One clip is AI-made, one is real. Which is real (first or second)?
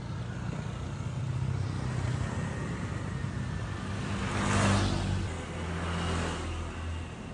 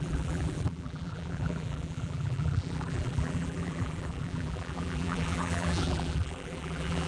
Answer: first